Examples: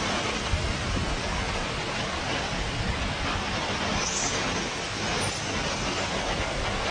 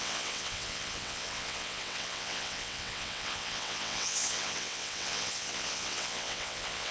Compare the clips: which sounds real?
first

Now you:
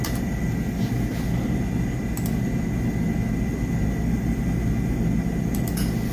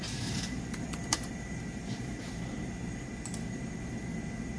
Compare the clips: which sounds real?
first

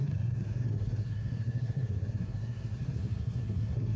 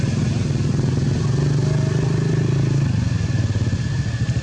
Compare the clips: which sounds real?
second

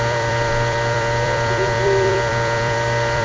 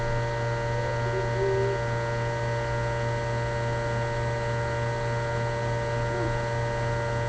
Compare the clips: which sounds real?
second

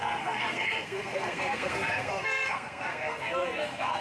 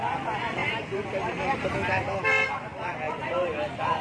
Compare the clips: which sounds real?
second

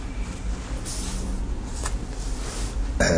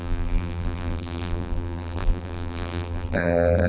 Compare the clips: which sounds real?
first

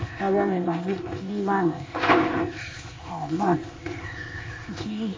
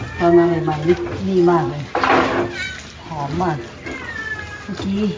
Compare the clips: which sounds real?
second